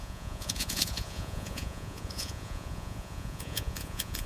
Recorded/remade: remade